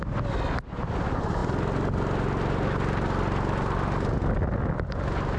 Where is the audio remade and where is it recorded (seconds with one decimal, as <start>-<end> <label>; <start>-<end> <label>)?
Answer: 0.0-5.4 recorded